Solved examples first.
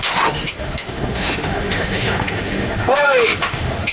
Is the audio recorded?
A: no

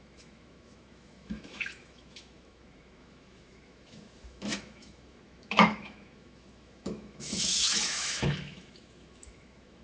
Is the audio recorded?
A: no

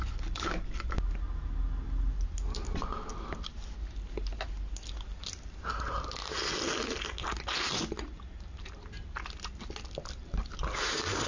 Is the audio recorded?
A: yes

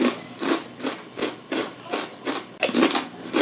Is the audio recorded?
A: yes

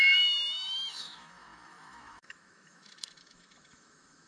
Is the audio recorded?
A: no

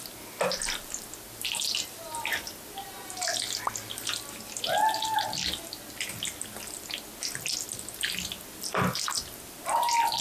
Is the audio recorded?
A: yes